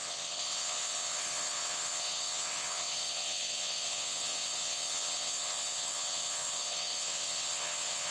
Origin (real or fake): fake